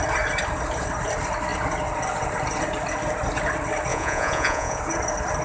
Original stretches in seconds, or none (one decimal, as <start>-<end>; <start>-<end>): 0.0-3.9; 4.8-5.4